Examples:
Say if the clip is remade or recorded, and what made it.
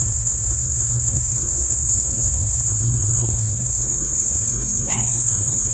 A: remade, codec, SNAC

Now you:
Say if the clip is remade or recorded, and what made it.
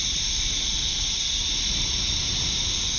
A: recorded